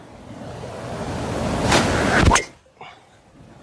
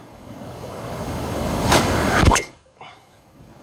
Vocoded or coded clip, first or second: second